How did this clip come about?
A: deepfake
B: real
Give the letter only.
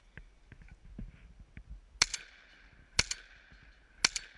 B